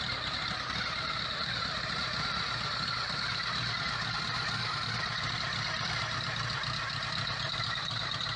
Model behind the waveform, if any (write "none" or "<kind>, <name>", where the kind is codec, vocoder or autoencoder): none